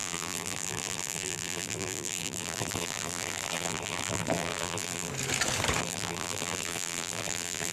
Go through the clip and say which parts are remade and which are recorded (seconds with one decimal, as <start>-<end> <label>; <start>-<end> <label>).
0.0-5.1 remade; 5.1-5.8 recorded; 5.8-7.7 remade